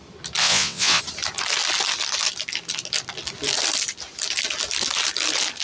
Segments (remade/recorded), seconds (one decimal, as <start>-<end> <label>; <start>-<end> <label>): 0.0-0.4 recorded; 0.4-1.0 remade; 1.0-5.6 recorded